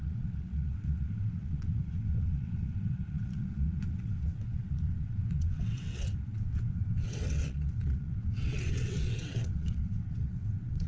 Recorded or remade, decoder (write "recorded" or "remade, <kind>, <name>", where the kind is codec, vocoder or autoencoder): remade, vocoder, WaveNeXt